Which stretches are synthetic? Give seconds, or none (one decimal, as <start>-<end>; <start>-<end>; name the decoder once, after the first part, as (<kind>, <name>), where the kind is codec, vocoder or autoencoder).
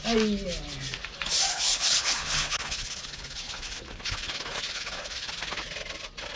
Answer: 1.5-5.3 (codec, HILCodec)